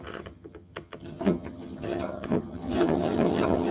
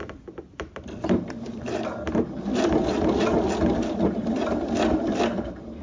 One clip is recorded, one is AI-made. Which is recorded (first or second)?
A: second